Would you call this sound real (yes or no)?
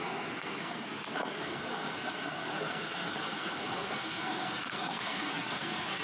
no